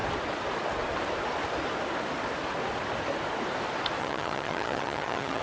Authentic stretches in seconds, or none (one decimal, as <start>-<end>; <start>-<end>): 0.0-4.0